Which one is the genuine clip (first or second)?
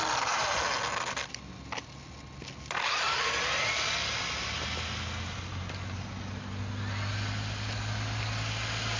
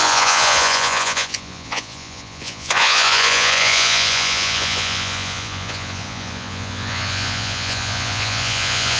first